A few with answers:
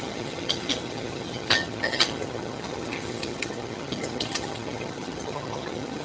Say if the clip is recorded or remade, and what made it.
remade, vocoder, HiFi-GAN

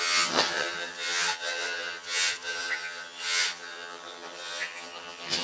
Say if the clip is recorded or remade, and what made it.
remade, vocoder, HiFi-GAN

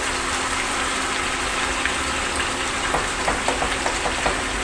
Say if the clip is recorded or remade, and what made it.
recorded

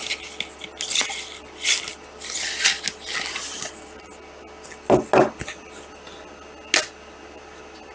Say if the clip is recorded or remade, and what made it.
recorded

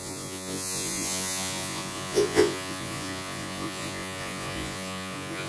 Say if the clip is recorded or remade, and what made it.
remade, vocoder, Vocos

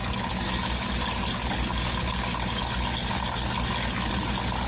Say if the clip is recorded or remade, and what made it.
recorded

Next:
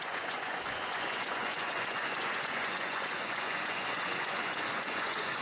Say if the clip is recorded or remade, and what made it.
remade, vocoder, Vocos